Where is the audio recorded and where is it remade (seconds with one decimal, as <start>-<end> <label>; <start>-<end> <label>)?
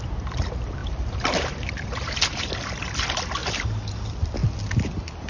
0.0-0.8 recorded; 0.8-2.5 remade; 2.5-5.3 recorded